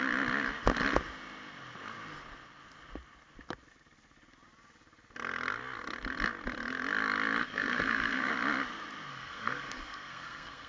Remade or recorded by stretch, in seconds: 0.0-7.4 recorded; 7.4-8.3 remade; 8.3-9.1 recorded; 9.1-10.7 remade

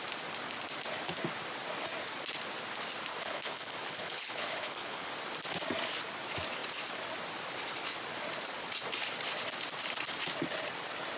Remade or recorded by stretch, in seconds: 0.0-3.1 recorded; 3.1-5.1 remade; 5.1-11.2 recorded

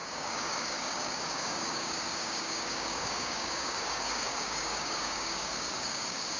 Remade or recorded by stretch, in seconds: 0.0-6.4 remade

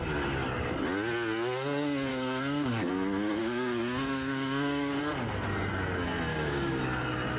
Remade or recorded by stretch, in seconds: 0.0-2.1 recorded; 2.1-2.9 remade; 2.9-3.4 recorded; 3.4-5.0 remade; 5.0-6.3 recorded; 6.3-6.8 remade; 6.8-7.4 recorded